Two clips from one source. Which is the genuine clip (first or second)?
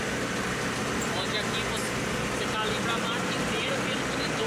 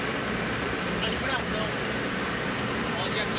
first